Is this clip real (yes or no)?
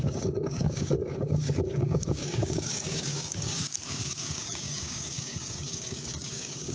no